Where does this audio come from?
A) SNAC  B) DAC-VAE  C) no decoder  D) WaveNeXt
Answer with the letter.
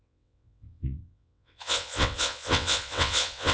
D